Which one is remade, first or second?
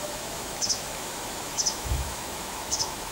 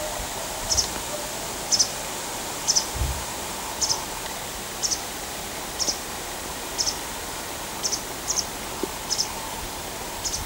first